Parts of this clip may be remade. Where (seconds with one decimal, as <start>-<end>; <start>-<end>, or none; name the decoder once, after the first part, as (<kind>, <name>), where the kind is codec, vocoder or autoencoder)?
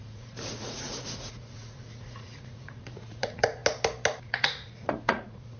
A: 0.0-3.6 (vocoder, Vocos); 4.2-5.6